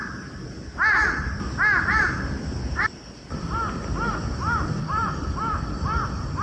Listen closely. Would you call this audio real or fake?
real